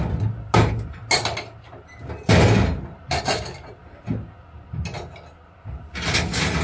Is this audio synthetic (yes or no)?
no